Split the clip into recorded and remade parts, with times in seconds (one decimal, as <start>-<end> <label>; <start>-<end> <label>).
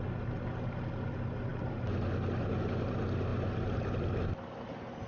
0.0-5.1 recorded